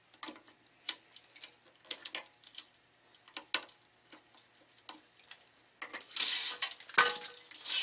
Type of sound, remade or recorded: recorded